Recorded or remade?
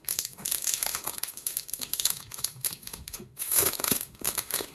remade